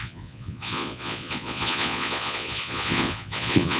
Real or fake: fake